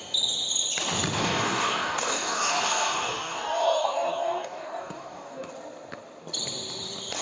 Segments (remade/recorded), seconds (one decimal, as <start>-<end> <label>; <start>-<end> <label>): 0.0-1.2 recorded; 1.2-5.5 remade; 5.5-7.2 recorded